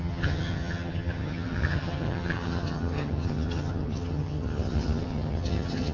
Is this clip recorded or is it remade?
remade